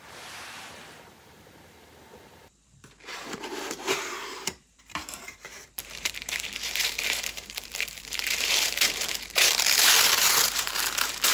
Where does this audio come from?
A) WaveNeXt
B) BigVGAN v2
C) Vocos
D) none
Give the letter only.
B